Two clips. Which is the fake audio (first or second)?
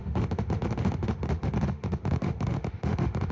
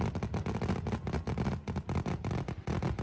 first